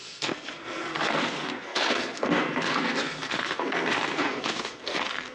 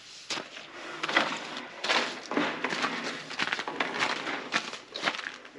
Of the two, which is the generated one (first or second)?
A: first